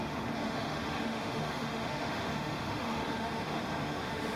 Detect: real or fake fake